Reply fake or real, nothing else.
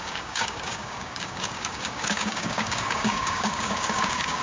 fake